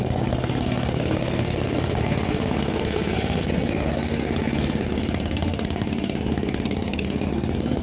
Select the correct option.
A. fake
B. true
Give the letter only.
A